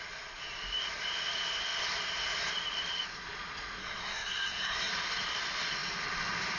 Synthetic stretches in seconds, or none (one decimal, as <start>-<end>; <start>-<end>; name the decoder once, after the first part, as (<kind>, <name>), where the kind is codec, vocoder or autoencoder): 3.8-4.9 (codec, SNAC)